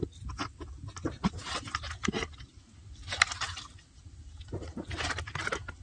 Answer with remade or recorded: recorded